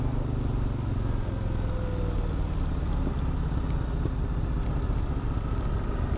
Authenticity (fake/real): real